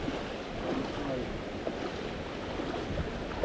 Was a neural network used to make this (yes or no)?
no